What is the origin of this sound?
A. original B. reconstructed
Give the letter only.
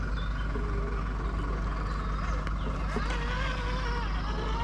A